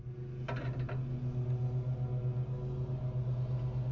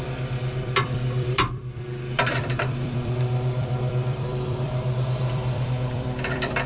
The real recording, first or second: first